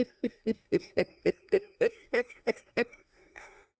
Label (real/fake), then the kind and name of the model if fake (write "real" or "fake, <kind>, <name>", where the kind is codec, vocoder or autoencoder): fake, codec, SNAC